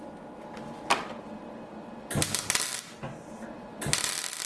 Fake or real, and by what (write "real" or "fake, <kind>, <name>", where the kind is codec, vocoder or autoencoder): real